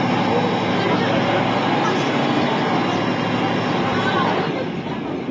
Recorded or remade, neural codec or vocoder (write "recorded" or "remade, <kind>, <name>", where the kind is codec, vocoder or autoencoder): recorded